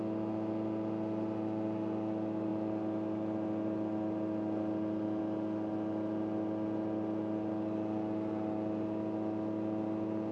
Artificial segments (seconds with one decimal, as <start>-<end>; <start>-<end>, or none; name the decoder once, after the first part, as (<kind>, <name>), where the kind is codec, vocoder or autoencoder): none